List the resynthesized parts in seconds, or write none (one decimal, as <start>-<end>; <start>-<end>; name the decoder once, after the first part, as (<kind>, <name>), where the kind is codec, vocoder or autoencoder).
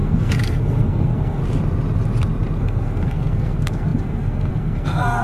0.0-1.4 (codec, SNAC); 2.6-5.2